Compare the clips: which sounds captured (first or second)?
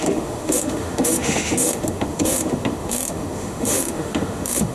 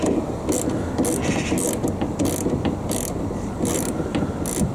second